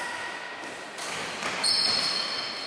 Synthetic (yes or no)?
no